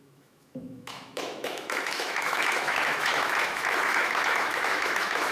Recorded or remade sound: remade